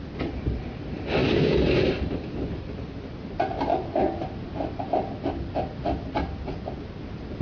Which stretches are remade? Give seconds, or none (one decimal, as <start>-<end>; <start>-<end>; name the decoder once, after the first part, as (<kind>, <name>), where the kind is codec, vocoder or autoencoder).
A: 1.2-2.9 (vocoder, BigVGAN v2); 3.7-6.7